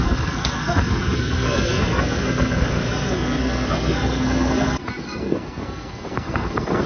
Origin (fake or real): fake